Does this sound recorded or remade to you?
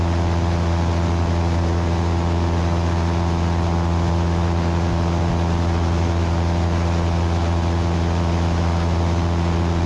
recorded